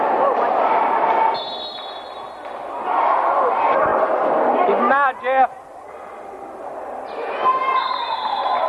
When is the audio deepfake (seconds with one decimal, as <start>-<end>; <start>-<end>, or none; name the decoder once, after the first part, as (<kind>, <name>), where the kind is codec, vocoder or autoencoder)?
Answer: none